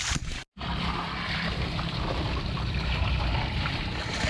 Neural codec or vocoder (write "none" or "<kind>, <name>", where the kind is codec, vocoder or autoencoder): none